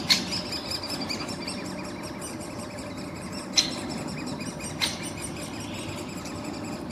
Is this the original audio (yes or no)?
yes